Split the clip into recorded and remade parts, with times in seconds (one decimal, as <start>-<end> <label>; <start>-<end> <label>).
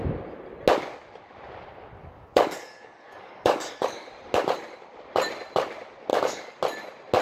0.0-2.0 recorded; 2.0-4.1 remade; 4.1-6.1 recorded; 6.1-6.6 remade; 6.6-7.2 recorded